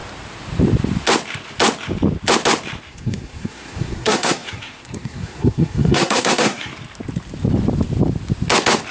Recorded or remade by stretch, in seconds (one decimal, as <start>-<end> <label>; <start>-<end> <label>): 0.0-2.9 recorded; 2.9-6.7 remade; 6.7-8.9 recorded